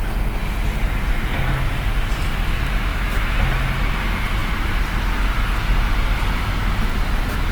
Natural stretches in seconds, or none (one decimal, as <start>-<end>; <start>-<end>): 0.0-2.9; 3.4-7.5